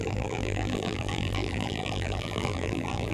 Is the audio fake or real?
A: fake